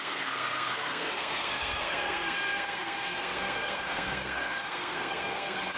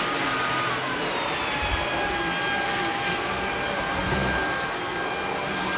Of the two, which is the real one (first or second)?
second